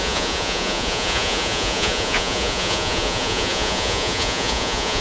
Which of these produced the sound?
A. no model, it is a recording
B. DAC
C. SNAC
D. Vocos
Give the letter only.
D